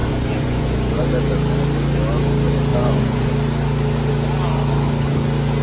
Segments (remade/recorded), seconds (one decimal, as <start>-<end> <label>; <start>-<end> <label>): 0.0-1.0 remade; 1.0-2.7 recorded; 2.7-3.3 remade; 3.3-5.6 recorded